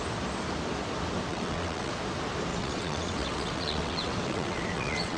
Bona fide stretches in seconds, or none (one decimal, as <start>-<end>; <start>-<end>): 0.0-1.3; 1.9-2.5